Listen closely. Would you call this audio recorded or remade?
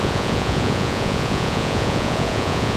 remade